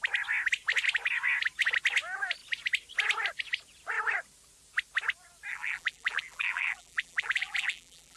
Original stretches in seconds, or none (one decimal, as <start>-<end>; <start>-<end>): 0.0-5.5